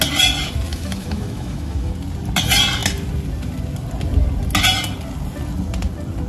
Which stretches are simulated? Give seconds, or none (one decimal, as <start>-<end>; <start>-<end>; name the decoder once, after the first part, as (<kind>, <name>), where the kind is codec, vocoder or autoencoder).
0.7-1.9 (autoencoder, DAC-VAE)